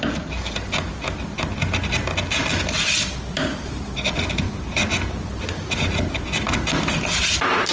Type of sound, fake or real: real